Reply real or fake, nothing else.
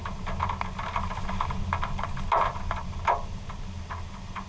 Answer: real